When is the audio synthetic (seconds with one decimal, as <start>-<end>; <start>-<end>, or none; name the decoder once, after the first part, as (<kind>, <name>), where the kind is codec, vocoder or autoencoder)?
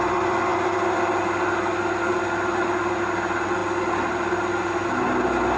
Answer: none